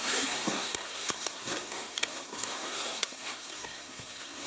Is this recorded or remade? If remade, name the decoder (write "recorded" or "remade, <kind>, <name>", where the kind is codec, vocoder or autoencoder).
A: remade, codec, SNAC